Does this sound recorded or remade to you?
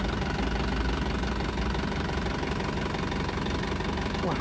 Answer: recorded